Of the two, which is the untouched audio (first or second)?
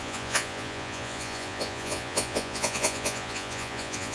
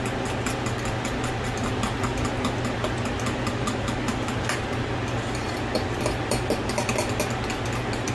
second